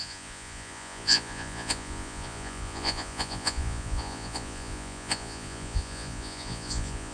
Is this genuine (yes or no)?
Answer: no